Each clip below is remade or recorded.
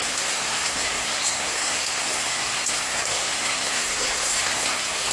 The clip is remade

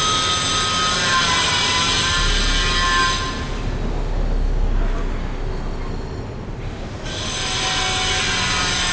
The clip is recorded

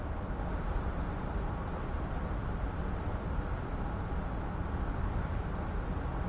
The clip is recorded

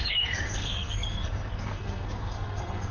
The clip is remade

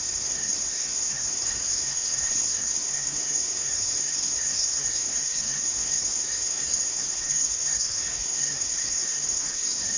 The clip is remade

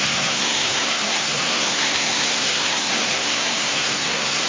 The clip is remade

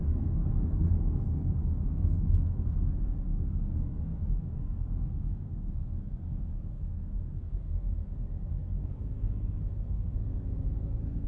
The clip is remade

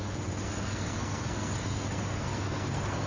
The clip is remade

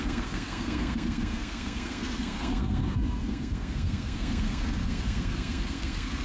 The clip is remade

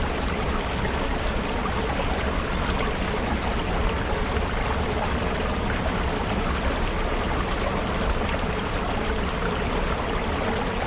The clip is recorded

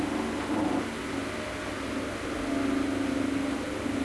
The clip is recorded